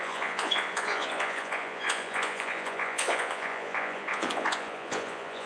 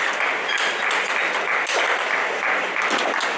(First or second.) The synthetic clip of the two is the first